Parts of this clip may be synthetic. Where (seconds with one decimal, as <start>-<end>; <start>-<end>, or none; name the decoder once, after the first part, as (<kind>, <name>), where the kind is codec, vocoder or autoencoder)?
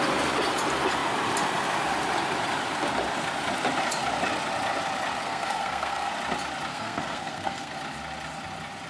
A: 5.2-6.1 (codec, SNAC); 6.7-7.7